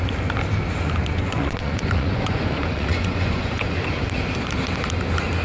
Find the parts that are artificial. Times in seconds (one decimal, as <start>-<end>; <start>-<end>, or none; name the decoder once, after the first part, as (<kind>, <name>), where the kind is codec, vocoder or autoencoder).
1.0-3.9 (vocoder, Vocos)

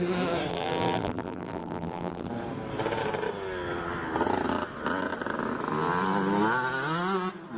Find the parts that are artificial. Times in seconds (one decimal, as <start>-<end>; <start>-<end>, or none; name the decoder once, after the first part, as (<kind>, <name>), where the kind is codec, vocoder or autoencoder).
0.5-2.3 (vocoder, BigVGAN v2)

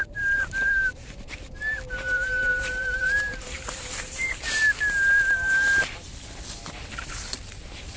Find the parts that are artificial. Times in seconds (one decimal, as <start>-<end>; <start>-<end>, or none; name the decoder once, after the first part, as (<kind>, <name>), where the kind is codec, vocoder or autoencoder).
0.0-4.4 (vocoder, BigVGAN v2)

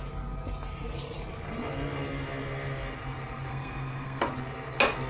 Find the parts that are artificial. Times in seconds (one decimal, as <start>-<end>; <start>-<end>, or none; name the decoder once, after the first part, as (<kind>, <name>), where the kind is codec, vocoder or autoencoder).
3.5-4.2 (codec, SNAC)

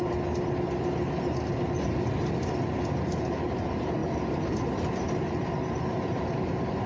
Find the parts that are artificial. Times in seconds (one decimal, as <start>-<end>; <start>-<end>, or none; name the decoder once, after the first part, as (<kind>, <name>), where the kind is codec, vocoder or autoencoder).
none

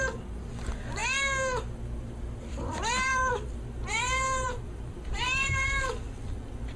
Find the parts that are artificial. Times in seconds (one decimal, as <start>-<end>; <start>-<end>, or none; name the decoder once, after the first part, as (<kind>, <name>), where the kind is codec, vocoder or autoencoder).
0.0-1.0 (vocoder, BigVGAN v2); 2.4-6.8

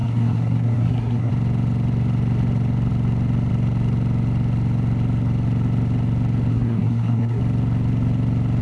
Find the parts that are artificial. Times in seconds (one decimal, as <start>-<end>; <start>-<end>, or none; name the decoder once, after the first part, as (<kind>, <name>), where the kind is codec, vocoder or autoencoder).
0.0-1.3 (codec, SNAC); 6.5-7.4

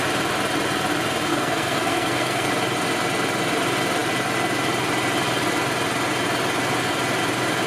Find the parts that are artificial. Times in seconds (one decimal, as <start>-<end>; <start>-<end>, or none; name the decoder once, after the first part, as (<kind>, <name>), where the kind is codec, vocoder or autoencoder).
1.3-2.5 (codec, SNAC)